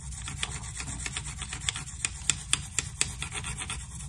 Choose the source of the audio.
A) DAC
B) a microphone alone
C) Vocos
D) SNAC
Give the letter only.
B